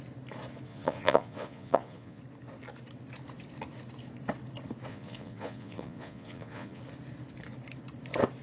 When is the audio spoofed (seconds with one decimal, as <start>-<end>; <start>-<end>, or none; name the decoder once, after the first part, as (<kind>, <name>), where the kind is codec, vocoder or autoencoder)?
0.7-2.2 (vocoder, Vocos); 4.9-6.8